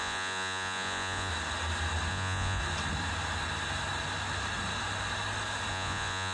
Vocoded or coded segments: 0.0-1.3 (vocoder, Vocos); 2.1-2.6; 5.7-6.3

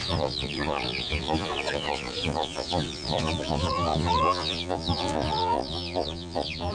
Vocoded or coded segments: 0.0-6.7 (vocoder, Vocos)

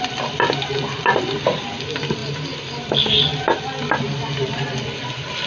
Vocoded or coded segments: none

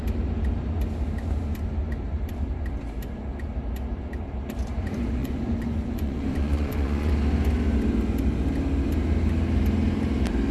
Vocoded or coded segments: 5.2-7.1 (vocoder, Vocos)

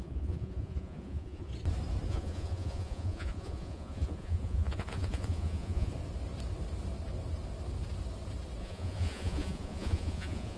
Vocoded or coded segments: 0.0-1.5 (vocoder, Vocos); 2.1-5.9; 8.6-10.6

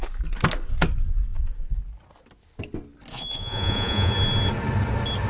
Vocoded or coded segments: 3.1-4.1 (vocoder, Vocos)

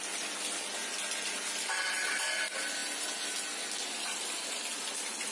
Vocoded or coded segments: none